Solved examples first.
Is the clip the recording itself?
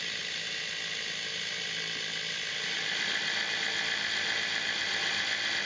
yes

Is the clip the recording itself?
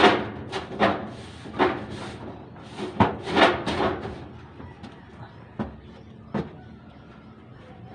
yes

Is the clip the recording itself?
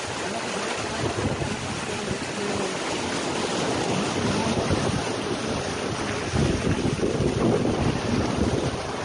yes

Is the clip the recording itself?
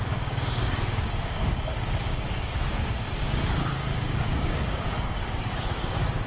no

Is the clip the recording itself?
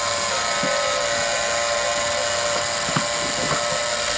yes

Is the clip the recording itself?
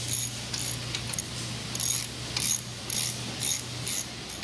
yes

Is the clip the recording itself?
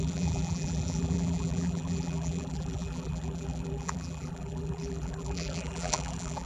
no